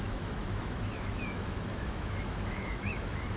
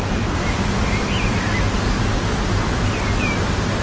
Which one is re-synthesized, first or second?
first